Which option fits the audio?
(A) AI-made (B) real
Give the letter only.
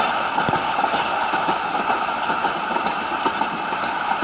B